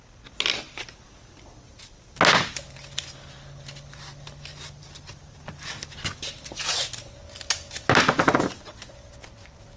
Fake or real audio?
real